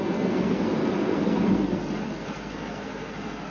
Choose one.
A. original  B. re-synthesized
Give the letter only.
B